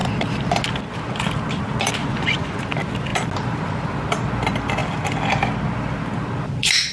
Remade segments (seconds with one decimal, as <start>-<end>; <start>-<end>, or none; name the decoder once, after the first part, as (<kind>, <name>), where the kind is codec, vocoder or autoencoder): 2.0-2.6 (vocoder, Vocos)